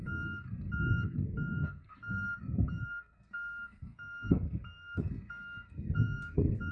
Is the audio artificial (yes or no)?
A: yes